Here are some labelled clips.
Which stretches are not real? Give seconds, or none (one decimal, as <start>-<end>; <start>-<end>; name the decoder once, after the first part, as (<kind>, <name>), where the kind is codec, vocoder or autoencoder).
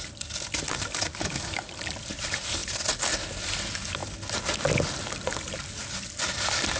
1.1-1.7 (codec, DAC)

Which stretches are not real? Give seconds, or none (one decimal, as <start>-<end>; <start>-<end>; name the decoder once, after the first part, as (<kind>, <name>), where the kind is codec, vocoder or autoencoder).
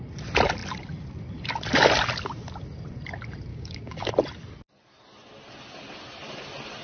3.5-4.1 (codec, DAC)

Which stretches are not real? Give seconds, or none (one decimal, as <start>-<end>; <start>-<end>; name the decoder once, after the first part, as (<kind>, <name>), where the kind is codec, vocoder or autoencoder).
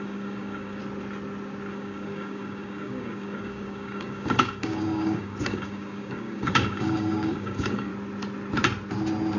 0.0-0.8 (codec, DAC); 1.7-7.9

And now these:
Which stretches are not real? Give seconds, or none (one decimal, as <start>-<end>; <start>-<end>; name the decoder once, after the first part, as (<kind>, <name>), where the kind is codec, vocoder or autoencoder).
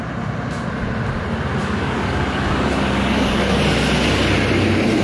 1.6-3.6 (codec, DAC)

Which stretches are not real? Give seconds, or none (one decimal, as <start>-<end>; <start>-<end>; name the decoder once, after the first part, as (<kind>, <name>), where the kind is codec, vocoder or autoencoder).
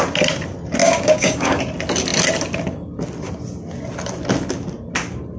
0.8-1.6 (codec, DAC)